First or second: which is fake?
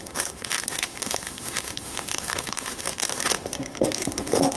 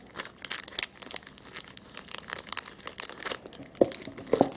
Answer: first